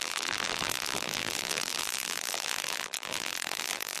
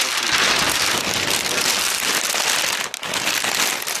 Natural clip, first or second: second